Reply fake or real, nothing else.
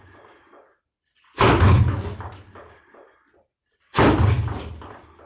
real